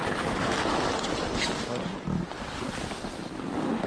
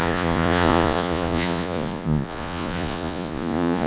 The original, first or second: first